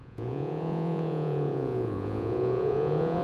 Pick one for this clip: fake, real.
fake